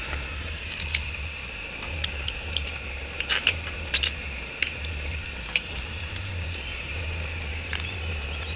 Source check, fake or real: fake